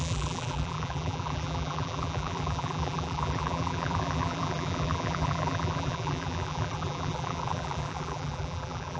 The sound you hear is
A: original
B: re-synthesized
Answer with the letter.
B